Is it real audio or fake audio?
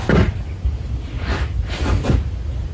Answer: real